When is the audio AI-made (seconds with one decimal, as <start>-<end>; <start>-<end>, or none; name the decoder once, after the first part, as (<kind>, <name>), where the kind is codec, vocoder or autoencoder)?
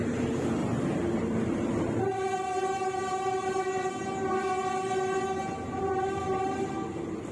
0.6-3.9 (vocoder, BigVGAN v2); 4.6-5.8